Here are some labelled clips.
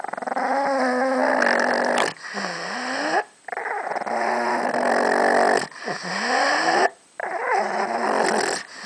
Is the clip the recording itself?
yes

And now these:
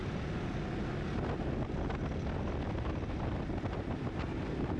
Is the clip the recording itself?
yes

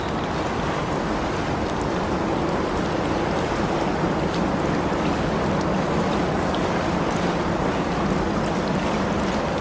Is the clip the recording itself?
yes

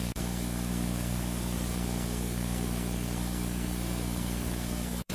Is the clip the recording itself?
no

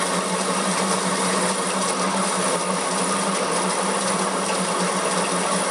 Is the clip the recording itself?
yes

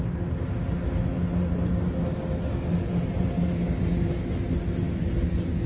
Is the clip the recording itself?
yes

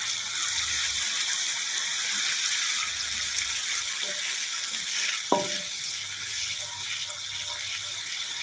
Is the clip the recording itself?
yes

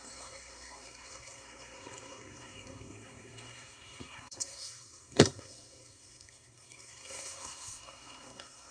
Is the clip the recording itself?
no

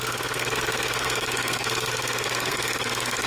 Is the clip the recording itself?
no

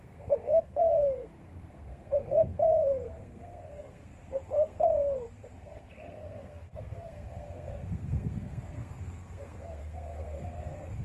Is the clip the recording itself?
no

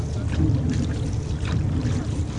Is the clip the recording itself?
yes